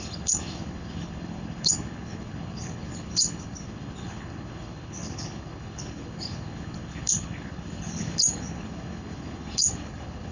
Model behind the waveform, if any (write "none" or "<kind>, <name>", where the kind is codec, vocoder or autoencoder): codec, HILCodec